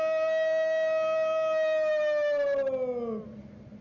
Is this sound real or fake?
real